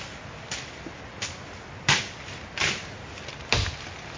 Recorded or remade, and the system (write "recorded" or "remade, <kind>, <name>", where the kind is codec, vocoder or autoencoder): recorded